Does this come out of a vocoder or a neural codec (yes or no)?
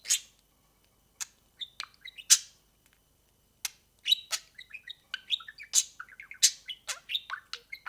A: no